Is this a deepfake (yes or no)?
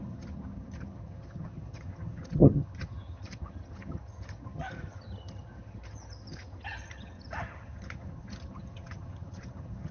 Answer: yes